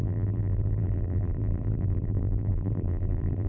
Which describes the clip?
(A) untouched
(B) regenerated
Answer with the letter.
B